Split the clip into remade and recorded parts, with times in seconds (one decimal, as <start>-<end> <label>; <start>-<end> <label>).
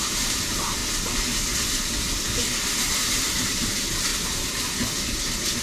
0.0-0.8 remade; 0.8-3.1 recorded; 3.1-4.1 remade; 4.1-5.6 recorded